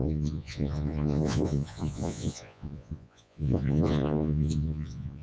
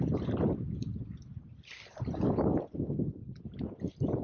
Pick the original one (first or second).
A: second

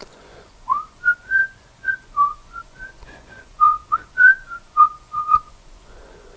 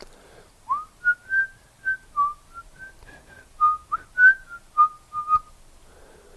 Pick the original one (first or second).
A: second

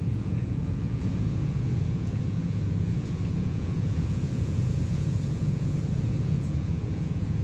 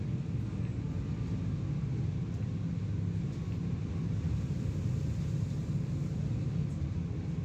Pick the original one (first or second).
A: second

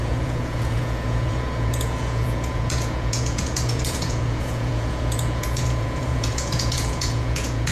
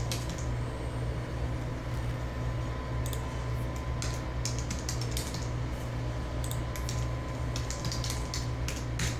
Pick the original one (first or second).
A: second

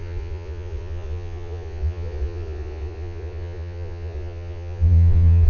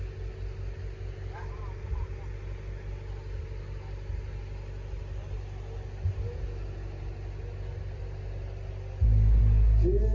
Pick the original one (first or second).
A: second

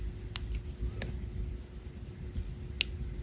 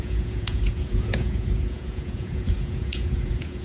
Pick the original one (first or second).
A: first